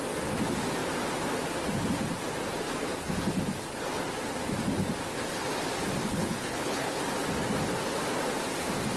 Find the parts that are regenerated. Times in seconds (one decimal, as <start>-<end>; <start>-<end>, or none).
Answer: 6.1-7.0

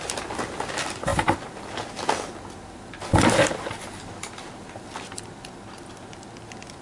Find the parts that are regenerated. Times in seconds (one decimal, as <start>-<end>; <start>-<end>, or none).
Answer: none

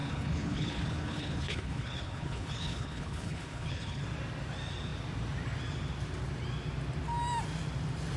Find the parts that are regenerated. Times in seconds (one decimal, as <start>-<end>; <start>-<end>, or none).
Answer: 0.0-4.0